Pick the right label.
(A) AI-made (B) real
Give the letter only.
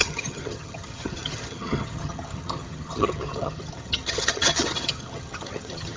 A